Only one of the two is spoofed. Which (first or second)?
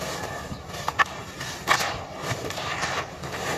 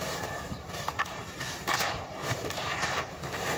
second